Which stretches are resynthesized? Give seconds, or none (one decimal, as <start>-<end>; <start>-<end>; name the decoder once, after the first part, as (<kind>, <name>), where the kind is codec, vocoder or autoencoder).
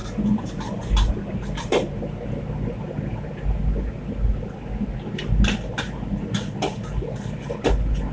0.0-2.0 (vocoder, BigVGAN v2)